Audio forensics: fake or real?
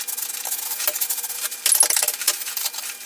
real